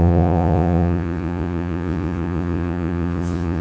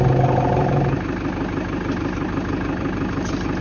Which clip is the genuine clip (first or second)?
second